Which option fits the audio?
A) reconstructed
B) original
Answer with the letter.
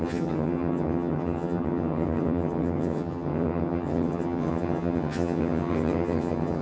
A